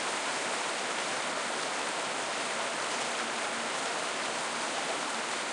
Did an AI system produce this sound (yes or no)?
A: no